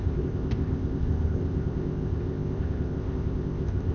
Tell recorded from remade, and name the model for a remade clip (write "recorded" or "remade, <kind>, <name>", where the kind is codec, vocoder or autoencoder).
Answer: remade, codec, ZipCodec